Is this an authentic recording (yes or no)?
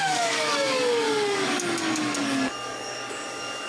no